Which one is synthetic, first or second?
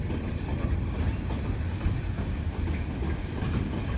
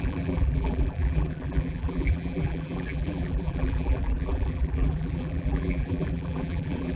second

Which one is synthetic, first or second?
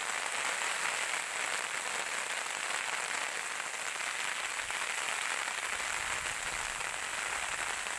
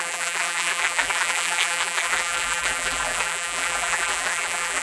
second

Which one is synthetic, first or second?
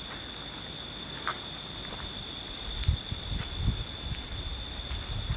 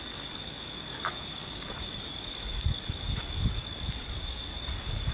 second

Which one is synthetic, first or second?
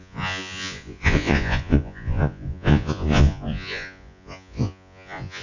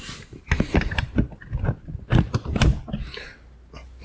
first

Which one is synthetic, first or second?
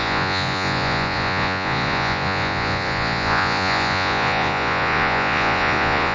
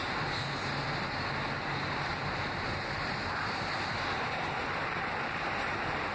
first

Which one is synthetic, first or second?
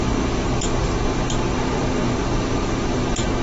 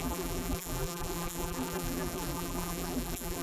second